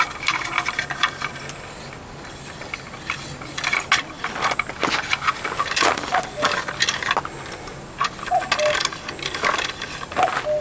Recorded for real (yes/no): yes